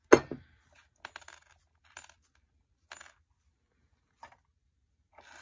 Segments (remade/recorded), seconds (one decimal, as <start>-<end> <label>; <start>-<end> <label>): 0.0-5.4 recorded

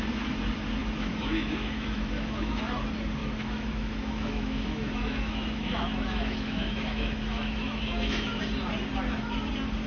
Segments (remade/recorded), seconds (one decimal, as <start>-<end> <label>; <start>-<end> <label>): 0.0-0.8 recorded; 0.8-2.6 remade; 2.6-3.2 recorded; 3.2-8.4 remade; 8.4-9.9 recorded

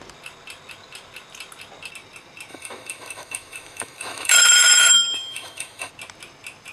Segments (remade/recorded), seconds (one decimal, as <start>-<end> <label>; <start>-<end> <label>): 0.0-2.5 recorded; 2.5-5.9 remade; 5.9-6.7 recorded

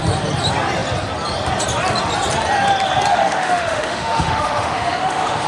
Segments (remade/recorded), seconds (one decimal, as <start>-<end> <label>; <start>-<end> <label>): 0.0-3.1 recorded; 3.1-5.5 remade

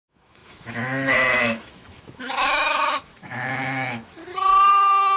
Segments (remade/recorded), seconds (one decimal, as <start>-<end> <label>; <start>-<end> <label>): 0.0-4.2 remade; 4.2-4.7 recorded; 4.7-5.2 remade

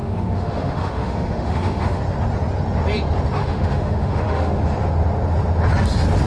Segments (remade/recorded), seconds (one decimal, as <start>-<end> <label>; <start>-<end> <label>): 0.0-2.0 remade; 2.0-3.4 recorded; 3.4-4.6 remade; 4.6-6.3 recorded

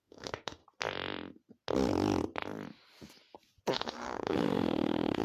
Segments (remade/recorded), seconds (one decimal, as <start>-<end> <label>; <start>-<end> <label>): 0.0-0.6 remade; 0.6-3.7 recorded; 3.7-5.2 remade